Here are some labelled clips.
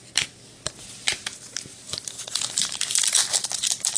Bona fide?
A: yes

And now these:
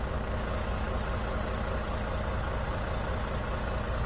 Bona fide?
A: yes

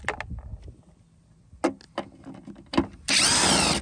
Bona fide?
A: yes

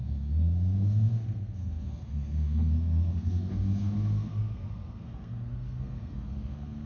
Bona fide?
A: no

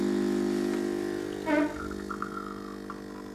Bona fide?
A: yes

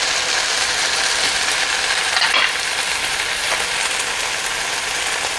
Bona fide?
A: yes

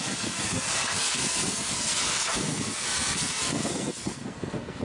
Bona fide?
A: no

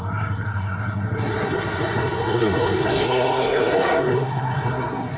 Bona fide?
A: no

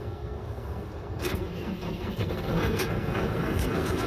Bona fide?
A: no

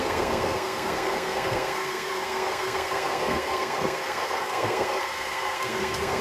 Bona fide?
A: no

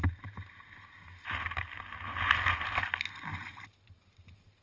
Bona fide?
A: yes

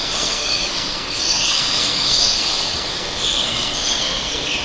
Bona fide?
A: no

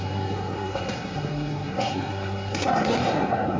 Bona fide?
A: no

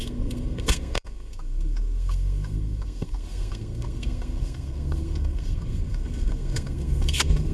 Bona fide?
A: no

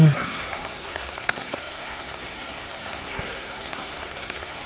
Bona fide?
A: no